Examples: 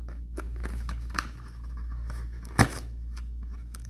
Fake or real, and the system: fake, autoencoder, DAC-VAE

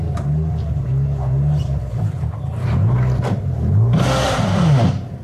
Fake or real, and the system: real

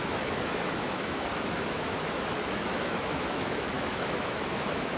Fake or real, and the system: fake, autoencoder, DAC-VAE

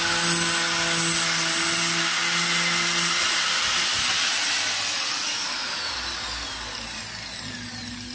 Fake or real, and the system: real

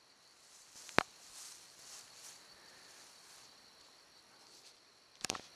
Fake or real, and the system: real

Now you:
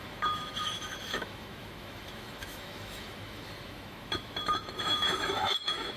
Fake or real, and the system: fake, autoencoder, DAC-VAE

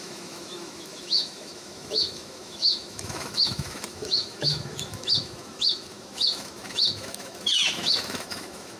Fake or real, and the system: fake, autoencoder, DAC-VAE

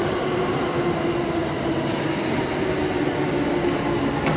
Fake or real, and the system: real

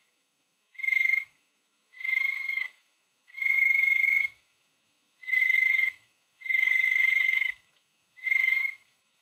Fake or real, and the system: fake, autoencoder, DAC-VAE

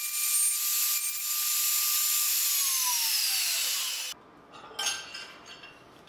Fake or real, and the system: real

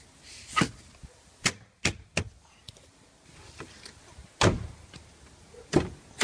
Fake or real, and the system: real